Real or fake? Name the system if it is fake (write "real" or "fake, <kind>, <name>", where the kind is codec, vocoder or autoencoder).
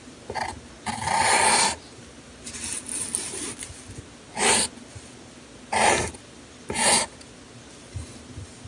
real